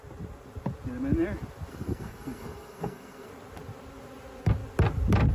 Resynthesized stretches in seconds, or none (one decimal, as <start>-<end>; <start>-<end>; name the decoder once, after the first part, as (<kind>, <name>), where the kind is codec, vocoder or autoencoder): 1.7-3.3 (codec, SNAC)